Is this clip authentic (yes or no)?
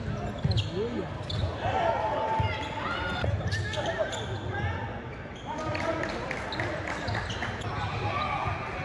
yes